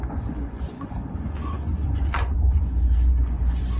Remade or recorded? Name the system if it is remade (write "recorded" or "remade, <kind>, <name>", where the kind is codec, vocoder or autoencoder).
remade, vocoder, Vocos